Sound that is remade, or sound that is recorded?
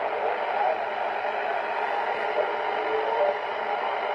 recorded